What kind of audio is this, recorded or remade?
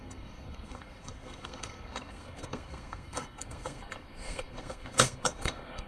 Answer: remade